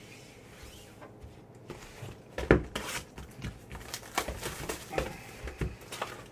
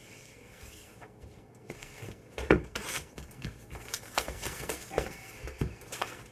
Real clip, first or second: first